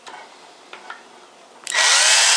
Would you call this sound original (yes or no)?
yes